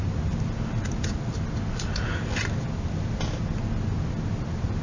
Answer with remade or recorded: recorded